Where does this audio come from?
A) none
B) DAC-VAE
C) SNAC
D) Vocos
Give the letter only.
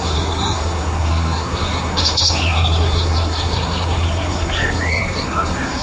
C